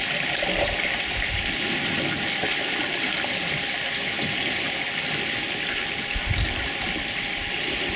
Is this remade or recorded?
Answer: recorded